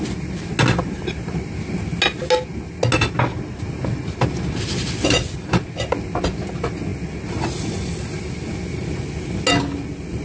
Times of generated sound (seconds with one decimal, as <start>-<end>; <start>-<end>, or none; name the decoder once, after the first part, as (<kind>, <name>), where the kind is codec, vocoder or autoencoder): none